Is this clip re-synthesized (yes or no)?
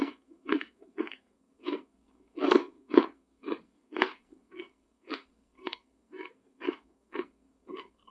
yes